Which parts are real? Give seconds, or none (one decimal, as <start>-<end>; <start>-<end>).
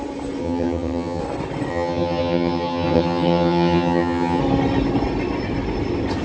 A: 0.0-0.4; 1.2-1.7; 4.4-6.2